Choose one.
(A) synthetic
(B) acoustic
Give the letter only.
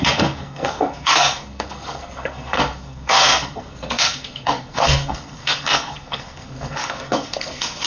A